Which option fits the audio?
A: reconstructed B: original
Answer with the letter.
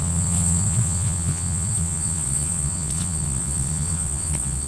A